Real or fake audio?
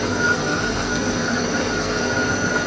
fake